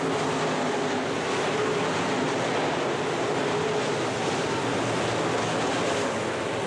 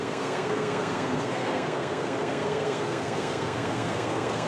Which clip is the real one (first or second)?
first